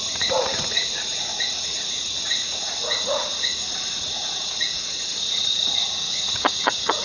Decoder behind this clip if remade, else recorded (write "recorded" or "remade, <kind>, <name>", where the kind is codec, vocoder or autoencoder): remade, vocoder, Vocos